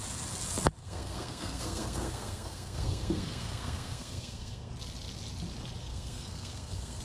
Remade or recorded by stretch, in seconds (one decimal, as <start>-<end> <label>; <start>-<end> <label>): 0.0-0.8 recorded; 0.8-4.7 remade; 4.7-5.8 recorded; 5.8-7.0 remade